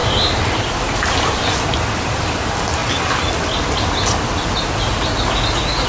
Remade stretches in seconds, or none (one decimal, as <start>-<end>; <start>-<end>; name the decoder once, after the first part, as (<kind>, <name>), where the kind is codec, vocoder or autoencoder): 0.0-1.4 (vocoder, BigVGAN v2)